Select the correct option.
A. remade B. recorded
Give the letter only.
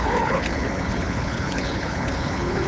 A